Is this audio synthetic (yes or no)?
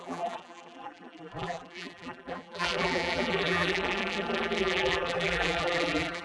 yes